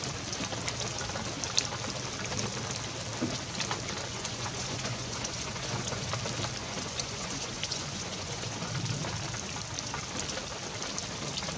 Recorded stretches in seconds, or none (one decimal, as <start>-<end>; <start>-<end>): 0.0-4.1; 6.1-6.6; 8.7-11.6